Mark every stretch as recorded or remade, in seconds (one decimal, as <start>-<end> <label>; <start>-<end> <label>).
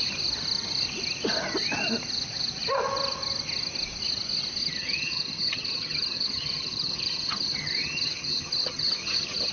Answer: 0.0-4.6 recorded; 4.6-9.5 remade